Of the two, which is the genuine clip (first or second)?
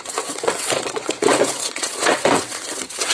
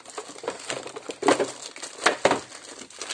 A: second